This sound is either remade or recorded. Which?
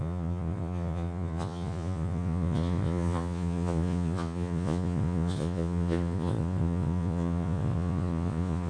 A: remade